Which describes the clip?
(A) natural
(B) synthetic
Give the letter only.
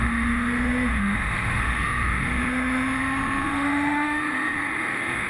B